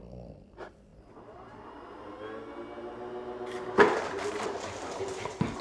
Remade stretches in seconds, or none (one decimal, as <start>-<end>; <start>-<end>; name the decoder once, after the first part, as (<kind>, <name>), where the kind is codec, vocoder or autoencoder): none